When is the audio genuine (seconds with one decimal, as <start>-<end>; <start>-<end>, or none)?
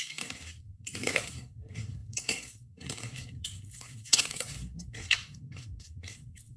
none